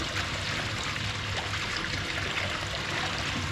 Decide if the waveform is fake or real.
real